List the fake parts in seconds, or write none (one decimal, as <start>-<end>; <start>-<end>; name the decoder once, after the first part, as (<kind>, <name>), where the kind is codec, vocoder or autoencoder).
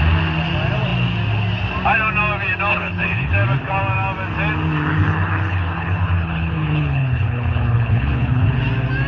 2.7-3.3 (codec, HILCodec); 4.9-8.6